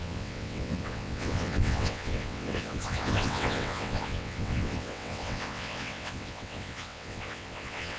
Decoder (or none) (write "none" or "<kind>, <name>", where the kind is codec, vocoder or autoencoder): vocoder, WaveNeXt